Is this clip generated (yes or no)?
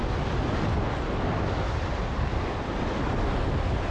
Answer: no